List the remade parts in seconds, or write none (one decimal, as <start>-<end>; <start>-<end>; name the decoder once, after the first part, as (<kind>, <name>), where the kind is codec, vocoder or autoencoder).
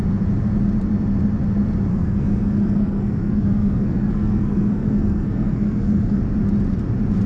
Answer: 1.9-6.2 (codec, SNAC)